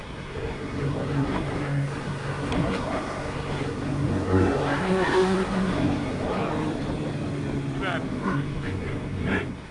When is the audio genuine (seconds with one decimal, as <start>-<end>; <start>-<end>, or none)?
6.4-8.1